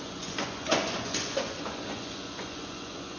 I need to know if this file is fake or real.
fake